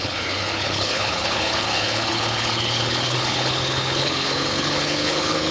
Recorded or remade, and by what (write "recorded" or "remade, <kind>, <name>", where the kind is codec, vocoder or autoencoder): remade, codec, HILCodec